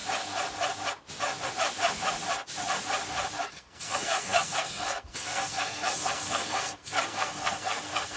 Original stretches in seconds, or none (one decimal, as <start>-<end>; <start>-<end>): 0.0-3.5